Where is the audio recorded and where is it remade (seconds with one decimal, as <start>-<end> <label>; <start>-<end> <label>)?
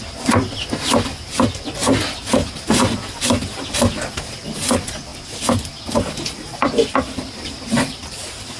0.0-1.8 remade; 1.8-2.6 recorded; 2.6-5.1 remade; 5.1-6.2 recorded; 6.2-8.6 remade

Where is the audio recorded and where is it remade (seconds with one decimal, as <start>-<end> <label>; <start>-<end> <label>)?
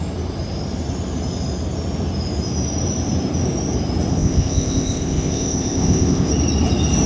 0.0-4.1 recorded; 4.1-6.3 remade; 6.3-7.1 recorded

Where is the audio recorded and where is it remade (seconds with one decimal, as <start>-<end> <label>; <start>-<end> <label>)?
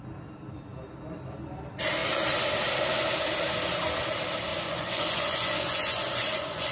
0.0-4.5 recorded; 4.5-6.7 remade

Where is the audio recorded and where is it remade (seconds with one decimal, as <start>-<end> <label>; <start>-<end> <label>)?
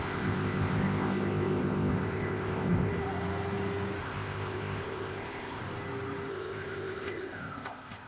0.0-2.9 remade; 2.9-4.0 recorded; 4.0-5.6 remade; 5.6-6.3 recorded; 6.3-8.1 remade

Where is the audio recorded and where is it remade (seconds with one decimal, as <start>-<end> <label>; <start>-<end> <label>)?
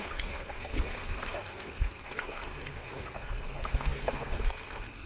0.0-5.1 remade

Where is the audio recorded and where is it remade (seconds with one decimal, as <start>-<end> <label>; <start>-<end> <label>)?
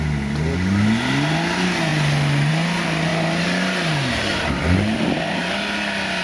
0.0-6.2 recorded